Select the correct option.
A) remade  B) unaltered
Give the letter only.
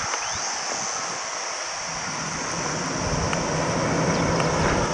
B